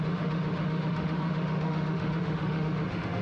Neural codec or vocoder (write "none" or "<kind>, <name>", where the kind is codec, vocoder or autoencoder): autoencoder, DAC-VAE